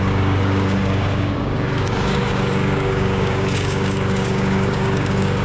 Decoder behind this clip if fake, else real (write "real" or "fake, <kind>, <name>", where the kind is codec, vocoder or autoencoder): fake, codec, DAC